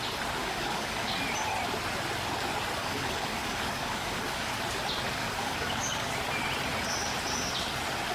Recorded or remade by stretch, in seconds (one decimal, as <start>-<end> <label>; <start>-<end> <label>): 0.0-0.4 recorded; 0.4-1.1 remade; 1.1-2.8 recorded; 2.8-4.5 remade; 4.5-5.2 recorded; 5.2-6.0 remade; 6.0-8.1 recorded